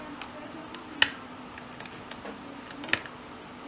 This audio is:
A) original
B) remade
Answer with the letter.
A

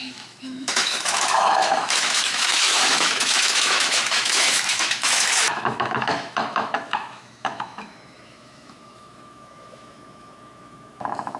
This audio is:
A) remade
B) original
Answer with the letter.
A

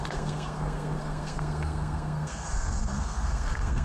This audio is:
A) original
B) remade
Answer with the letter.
B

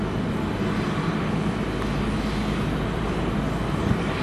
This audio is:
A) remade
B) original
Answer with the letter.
B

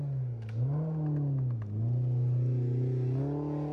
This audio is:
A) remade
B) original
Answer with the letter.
B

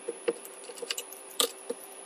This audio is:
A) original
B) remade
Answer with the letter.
B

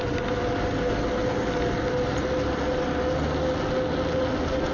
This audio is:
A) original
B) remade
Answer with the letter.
A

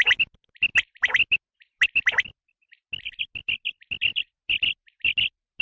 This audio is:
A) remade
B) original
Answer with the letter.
B